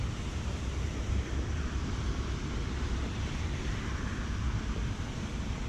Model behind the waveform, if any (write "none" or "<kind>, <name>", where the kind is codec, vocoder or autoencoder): vocoder, BigVGAN v2